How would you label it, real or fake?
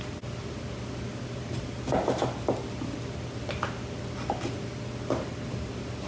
real